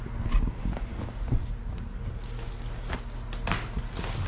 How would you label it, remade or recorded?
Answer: recorded